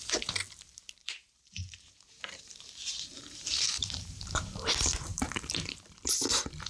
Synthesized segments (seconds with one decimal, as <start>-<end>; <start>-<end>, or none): 1.0-4.2; 5.1-5.8